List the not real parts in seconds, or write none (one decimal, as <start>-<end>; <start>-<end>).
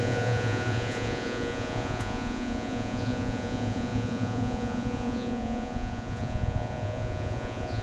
0.0-7.8